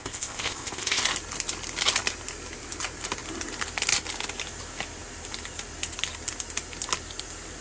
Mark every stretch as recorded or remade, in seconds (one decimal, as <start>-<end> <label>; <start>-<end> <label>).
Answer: 0.0-1.0 remade; 1.0-7.6 recorded